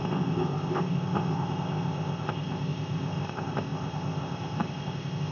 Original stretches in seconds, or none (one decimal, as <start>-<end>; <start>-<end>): none